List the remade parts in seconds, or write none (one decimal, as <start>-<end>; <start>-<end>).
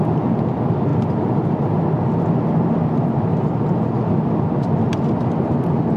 none